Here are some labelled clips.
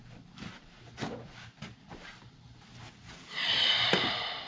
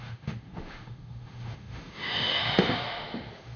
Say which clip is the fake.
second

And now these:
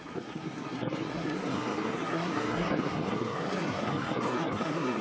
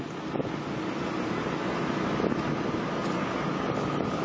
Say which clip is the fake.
first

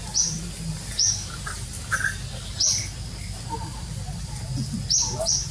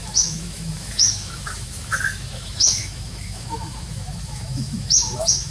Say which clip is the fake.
second